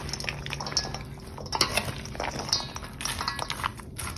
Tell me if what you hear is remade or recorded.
recorded